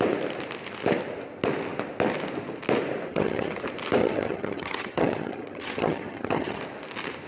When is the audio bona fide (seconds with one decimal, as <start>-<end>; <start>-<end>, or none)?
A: 0.0-3.1; 3.6-4.0; 6.6-7.3